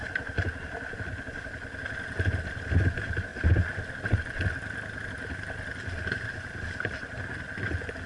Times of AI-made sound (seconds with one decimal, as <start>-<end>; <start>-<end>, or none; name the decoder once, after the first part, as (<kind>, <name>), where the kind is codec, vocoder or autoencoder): none